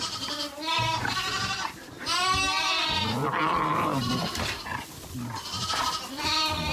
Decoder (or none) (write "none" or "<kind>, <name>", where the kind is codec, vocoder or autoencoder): none